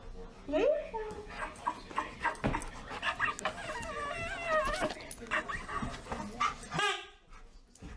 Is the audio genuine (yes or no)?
yes